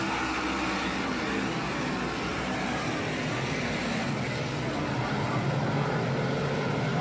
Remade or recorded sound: recorded